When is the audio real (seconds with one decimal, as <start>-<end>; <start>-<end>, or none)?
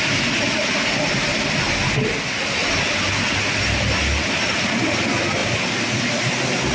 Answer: 0.0-5.4; 5.9-6.7